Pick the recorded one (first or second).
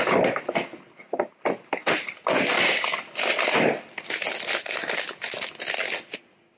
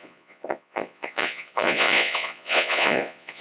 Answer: first